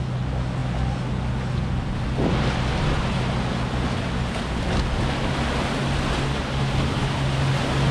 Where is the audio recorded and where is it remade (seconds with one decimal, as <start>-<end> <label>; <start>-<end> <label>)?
0.0-7.9 recorded